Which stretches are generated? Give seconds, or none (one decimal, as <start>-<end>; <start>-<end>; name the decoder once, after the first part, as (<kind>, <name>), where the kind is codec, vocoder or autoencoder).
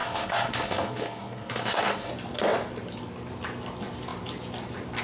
0.0-2.1 (codec, SNAC)